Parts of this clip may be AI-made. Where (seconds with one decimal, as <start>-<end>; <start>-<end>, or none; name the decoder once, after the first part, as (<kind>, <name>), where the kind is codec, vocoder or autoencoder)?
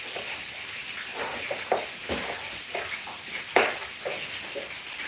none